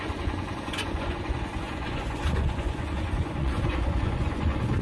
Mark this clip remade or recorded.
remade